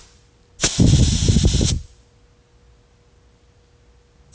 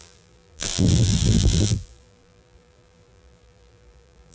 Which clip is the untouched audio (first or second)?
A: first